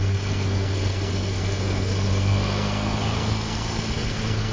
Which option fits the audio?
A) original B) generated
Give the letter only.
B